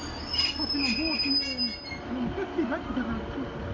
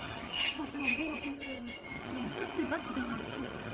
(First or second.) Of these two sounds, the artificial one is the second